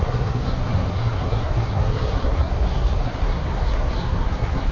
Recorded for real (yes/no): no